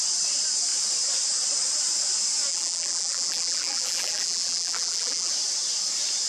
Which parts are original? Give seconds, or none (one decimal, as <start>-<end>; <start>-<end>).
0.0-2.5; 5.3-6.3